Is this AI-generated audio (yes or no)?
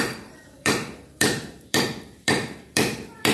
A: yes